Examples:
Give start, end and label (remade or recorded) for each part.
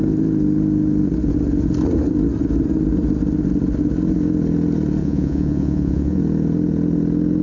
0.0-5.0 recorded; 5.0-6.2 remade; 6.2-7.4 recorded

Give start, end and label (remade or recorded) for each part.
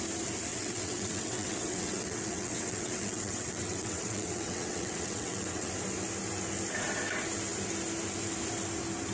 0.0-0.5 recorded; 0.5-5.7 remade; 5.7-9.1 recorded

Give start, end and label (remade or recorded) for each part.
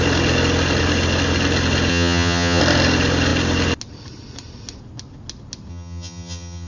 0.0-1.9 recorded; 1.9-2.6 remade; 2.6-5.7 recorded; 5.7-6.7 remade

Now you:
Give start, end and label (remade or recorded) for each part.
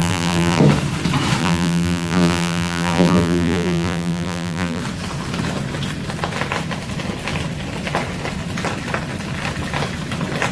0.0-0.6 remade; 0.6-1.4 recorded; 1.4-4.8 remade; 4.8-10.5 recorded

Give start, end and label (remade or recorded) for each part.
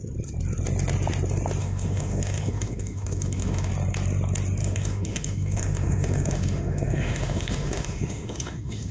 0.0-1.6 recorded; 1.6-3.7 remade; 3.7-4.6 recorded; 4.6-8.9 remade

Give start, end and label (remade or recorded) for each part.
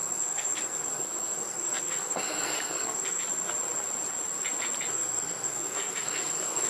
0.0-3.2 remade; 3.2-4.9 recorded; 4.9-6.7 remade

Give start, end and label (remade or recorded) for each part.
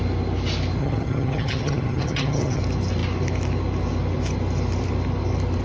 0.0-0.8 recorded; 0.8-2.6 remade; 2.6-5.6 recorded